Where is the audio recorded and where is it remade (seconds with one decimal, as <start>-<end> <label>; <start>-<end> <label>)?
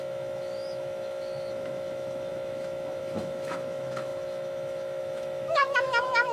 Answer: 0.0-6.3 remade